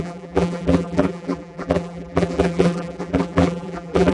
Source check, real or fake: fake